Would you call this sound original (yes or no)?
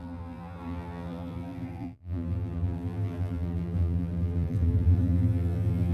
no